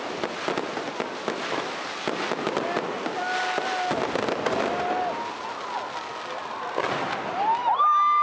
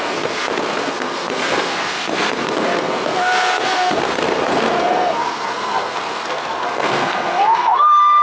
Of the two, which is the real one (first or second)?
first